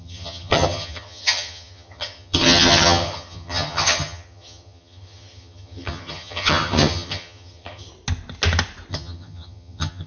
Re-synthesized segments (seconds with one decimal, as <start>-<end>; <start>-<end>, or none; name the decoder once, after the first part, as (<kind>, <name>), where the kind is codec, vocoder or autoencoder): 0.0-7.9 (vocoder, HiFi-GAN); 8.9-10.1